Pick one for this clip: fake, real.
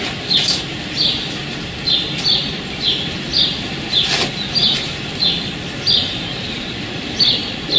real